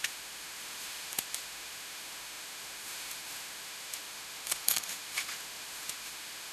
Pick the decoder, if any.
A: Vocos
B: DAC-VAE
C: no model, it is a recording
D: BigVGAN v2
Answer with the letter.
B